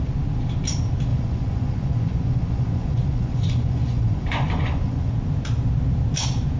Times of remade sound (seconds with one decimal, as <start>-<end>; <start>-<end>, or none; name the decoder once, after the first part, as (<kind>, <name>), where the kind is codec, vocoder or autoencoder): 1.1-5.1 (vocoder, Vocos)